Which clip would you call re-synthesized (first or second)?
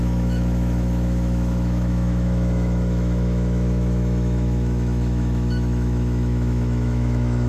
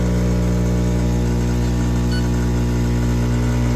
first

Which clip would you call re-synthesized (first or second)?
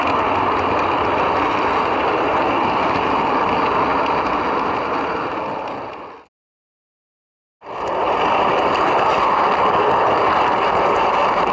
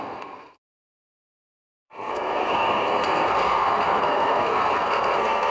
second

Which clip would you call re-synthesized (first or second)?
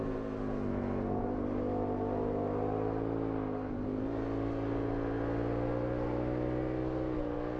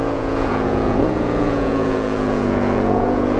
second